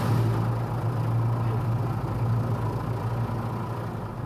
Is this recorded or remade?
recorded